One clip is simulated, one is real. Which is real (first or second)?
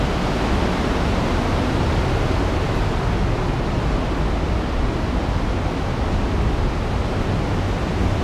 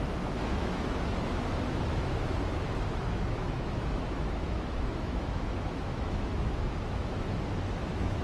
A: first